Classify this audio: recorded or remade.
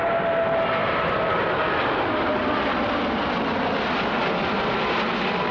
recorded